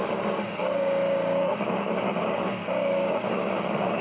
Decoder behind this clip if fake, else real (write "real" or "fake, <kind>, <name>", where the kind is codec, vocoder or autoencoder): fake, codec, DAC